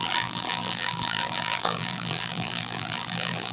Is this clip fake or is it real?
fake